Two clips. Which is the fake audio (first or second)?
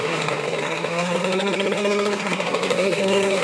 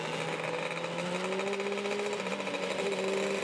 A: first